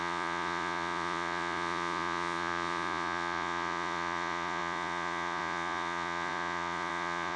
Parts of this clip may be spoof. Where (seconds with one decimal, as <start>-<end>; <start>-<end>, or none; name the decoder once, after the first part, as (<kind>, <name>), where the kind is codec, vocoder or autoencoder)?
0.0-7.4 (vocoder, Vocos)

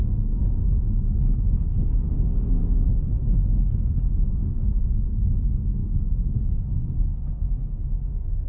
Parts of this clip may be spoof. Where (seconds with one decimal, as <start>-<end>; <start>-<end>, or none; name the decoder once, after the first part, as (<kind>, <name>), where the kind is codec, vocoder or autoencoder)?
0.0-0.6 (codec, SNAC); 2.0-8.5